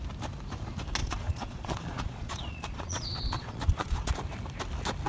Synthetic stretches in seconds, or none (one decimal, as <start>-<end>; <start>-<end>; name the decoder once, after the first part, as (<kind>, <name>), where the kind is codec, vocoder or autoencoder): 1.0-4.1 (vocoder, Vocos)